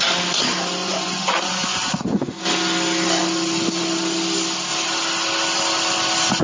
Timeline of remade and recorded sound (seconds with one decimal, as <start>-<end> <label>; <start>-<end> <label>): 0.0-0.8 recorded; 0.8-2.4 remade; 2.4-6.4 recorded